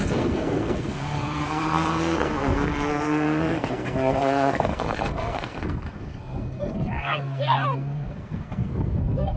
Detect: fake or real fake